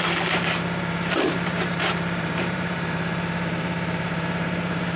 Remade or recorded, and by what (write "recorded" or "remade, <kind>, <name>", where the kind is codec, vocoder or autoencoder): remade, vocoder, BigVGAN v2